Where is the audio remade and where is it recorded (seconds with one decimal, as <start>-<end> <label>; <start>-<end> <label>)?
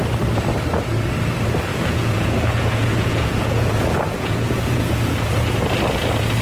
0.0-1.7 recorded; 1.7-5.5 remade; 5.5-6.4 recorded